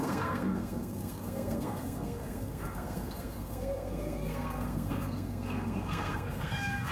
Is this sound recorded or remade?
remade